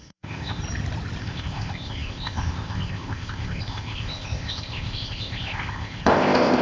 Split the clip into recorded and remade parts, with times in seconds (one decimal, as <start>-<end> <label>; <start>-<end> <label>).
0.0-0.6 remade; 0.6-1.2 recorded; 1.2-6.6 remade